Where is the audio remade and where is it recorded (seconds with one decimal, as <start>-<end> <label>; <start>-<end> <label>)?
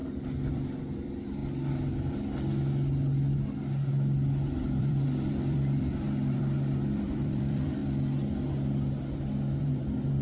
0.0-0.5 recorded; 0.5-1.4 remade; 1.4-4.8 recorded; 4.8-7.8 remade; 7.8-9.6 recorded; 9.6-10.2 remade